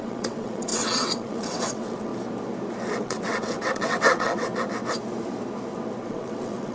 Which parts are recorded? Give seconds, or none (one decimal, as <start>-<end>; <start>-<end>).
2.1-3.0; 4.5-6.0

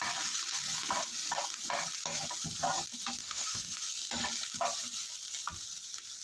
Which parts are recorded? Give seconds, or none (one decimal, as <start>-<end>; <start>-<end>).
0.0-3.2; 3.8-6.2

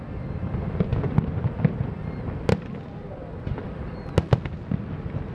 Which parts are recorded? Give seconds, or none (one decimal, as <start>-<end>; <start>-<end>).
0.0-5.3

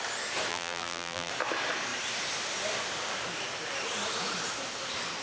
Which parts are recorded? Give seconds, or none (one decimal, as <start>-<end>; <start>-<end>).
0.0-0.5; 1.3-5.2

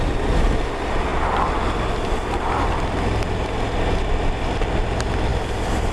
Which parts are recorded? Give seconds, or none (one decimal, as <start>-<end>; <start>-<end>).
0.0-5.9

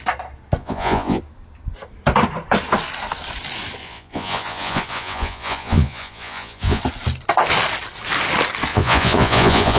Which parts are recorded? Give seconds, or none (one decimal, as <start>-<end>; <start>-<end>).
0.0-0.6; 1.2-3.8; 6.8-8.7